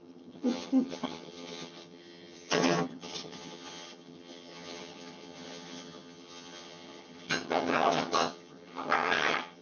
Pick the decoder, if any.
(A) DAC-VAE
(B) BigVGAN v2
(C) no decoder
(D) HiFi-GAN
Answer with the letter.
D